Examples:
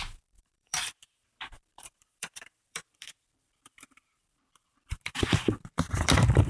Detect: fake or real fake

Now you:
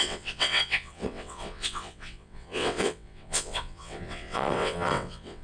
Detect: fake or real fake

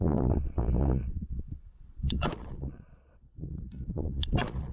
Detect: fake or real fake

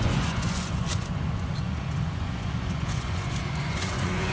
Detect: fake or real fake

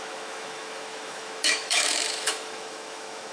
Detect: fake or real fake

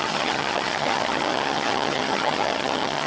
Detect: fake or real fake